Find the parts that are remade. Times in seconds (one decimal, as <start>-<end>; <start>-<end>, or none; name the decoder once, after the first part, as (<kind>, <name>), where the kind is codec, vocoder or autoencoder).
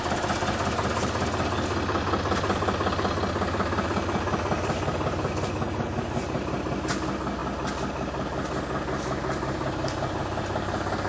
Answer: none